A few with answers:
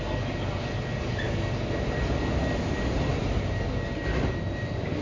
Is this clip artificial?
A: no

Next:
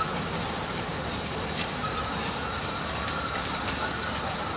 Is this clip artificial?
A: yes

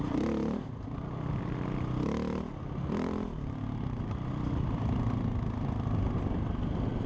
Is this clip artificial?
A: no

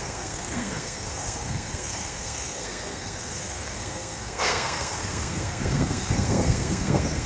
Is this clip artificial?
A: yes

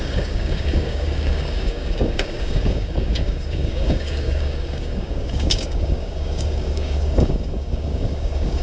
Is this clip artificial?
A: yes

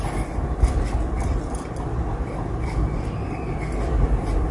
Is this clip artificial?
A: no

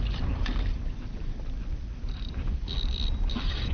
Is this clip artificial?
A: no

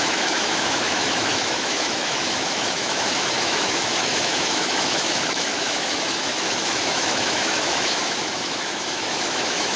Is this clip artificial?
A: yes